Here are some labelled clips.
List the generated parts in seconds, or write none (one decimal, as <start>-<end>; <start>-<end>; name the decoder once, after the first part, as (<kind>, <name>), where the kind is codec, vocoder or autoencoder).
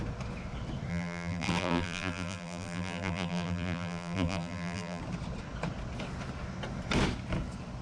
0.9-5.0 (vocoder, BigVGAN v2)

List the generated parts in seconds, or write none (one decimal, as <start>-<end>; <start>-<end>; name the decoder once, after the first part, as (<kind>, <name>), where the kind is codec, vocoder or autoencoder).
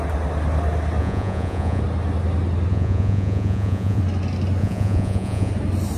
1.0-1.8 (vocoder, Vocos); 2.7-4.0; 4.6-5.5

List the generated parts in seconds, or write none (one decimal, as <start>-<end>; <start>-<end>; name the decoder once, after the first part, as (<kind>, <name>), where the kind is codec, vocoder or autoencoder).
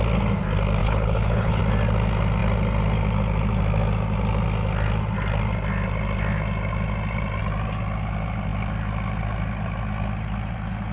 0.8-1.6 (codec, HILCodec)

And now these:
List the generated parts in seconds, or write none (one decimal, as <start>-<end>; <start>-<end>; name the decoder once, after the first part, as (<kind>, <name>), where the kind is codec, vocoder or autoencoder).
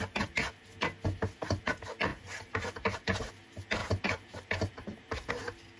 2.1-3.3 (vocoder, BigVGAN v2); 3.8-5.3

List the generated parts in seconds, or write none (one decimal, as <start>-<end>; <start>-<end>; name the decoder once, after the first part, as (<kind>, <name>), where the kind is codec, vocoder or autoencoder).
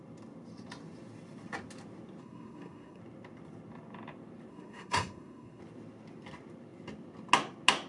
2.2-3.0 (codec, SNAC); 4.5-5.6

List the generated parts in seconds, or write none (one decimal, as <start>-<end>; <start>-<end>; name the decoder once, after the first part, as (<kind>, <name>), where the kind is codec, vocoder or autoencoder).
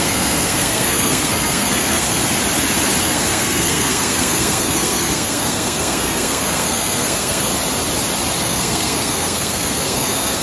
0.0-2.2 (codec, SNAC); 3.0-7.5; 8.4-10.4